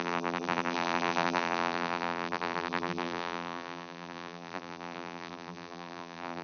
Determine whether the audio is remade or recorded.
remade